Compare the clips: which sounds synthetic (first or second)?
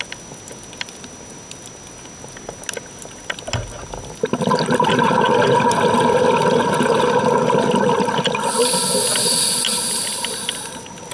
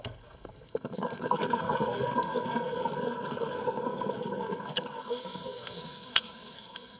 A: second